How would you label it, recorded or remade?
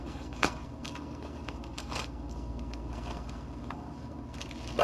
remade